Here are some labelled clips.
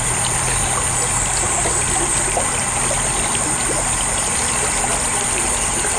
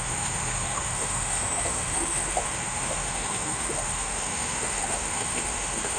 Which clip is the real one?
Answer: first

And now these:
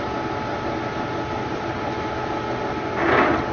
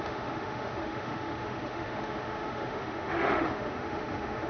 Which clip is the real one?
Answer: first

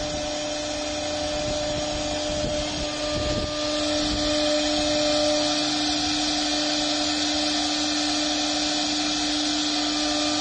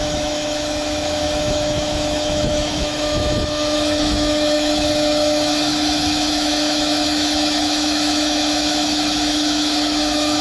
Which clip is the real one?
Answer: first